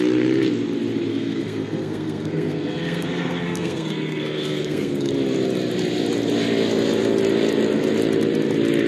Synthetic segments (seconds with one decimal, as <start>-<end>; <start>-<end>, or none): 1.1-5.1